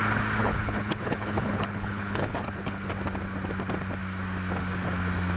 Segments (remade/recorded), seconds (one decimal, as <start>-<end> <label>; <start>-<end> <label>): 0.0-0.4 recorded; 0.4-2.9 remade; 2.9-5.4 recorded

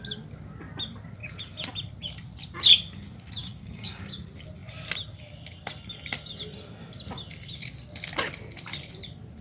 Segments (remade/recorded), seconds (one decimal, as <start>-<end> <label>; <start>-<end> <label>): 0.0-3.4 recorded; 3.4-4.1 remade; 4.1-9.4 recorded

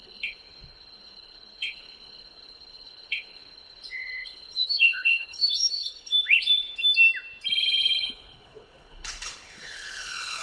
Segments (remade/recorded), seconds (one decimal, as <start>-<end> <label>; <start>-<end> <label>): 0.0-6.8 remade; 6.8-7.6 recorded; 7.6-10.4 remade

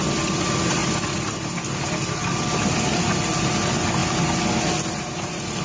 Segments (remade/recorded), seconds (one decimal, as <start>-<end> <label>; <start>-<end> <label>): 0.0-5.6 recorded

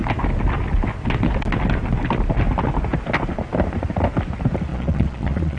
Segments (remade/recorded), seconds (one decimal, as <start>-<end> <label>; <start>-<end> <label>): 0.0-4.7 recorded; 4.7-5.6 remade

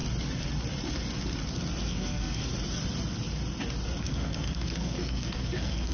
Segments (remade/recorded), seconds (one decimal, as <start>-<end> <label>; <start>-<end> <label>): 0.0-1.9 recorded; 1.9-2.4 remade; 2.4-4.0 recorded; 4.0-5.9 remade

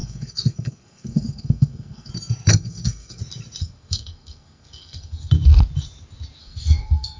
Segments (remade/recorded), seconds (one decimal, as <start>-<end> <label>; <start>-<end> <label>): 0.0-2.1 remade; 2.1-2.5 recorded; 2.5-3.2 remade; 3.2-3.6 recorded; 3.6-5.3 remade; 5.3-6.4 recorded; 6.4-7.2 remade

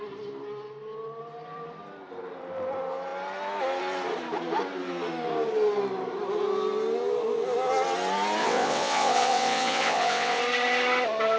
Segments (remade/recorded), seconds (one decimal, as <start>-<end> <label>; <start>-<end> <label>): 0.0-8.4 recorded; 8.4-10.4 remade; 10.4-11.4 recorded